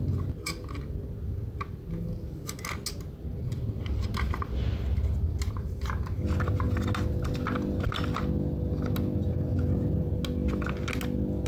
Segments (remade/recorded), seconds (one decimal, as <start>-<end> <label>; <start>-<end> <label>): 0.0-9.5 recorded; 9.5-10.2 remade; 10.2-11.5 recorded